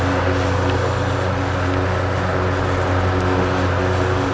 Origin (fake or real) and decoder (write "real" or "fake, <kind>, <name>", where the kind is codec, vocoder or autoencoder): real